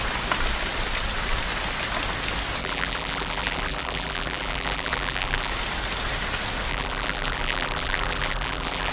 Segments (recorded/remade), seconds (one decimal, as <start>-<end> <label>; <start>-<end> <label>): 0.0-2.6 recorded; 2.6-5.5 remade; 5.5-6.7 recorded; 6.7-8.9 remade